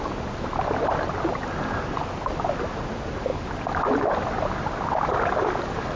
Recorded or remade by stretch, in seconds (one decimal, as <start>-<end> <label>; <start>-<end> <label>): 0.0-6.0 recorded